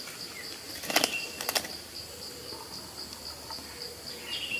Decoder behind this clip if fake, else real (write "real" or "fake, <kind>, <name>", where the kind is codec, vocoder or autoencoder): real